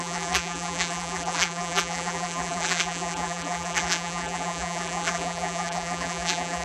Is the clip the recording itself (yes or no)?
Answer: no